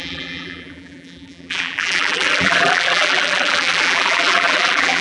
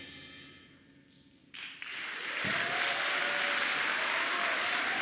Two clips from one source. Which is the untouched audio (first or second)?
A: second